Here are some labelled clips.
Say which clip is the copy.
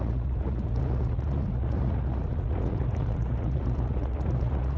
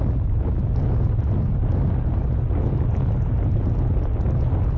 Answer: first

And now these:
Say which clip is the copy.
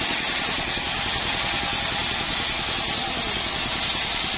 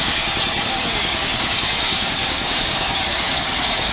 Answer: second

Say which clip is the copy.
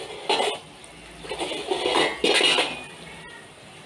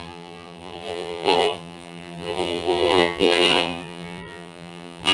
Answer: second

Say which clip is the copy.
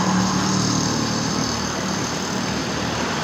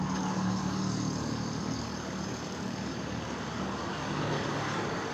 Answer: second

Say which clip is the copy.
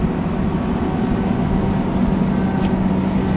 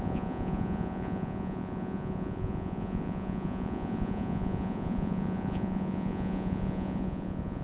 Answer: second